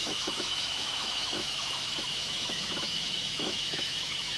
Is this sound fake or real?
fake